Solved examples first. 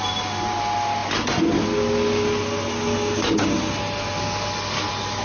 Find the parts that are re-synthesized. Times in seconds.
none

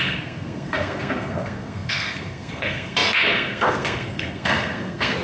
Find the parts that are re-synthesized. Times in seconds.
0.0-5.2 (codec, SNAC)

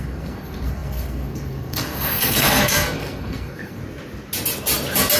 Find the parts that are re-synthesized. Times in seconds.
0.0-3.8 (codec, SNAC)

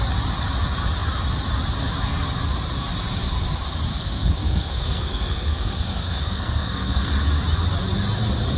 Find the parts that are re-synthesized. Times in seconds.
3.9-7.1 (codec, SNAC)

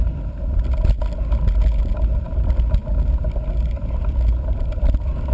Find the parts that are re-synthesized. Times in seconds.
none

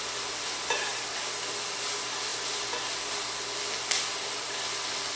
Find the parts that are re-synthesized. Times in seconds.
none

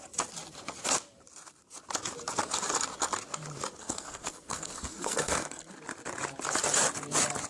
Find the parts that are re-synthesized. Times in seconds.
3.8-5.7 (codec, SNAC)

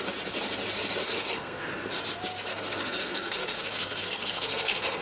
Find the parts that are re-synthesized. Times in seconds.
1.0-1.7 (codec, SNAC); 2.5-5.0